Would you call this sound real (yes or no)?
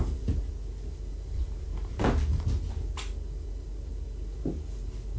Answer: yes